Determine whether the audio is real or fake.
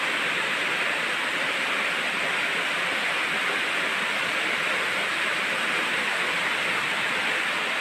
fake